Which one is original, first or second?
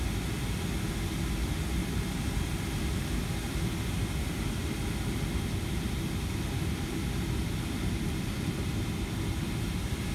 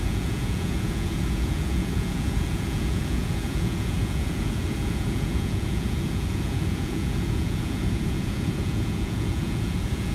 first